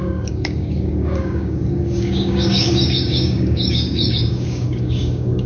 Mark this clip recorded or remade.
remade